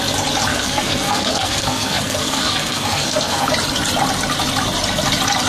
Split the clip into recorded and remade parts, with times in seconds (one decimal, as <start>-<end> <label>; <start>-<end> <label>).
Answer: 0.0-0.5 recorded; 0.5-3.5 remade; 3.5-5.5 recorded